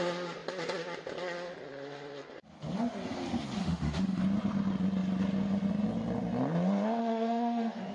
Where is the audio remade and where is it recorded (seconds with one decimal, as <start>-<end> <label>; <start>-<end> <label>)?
0.0-3.6 recorded; 3.6-4.2 remade; 4.2-7.0 recorded; 7.0-7.9 remade